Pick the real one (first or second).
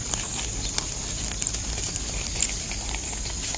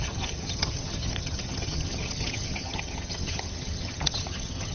first